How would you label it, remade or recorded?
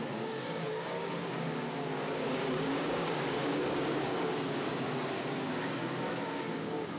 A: remade